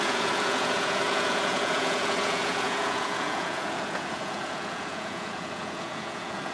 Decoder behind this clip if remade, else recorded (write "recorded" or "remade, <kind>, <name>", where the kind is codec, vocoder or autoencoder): remade, vocoder, Vocos